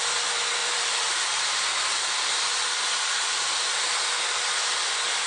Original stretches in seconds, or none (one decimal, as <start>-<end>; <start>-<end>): 0.0-0.6; 1.1-5.3